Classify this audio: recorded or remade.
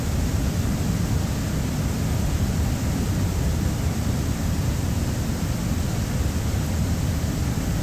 recorded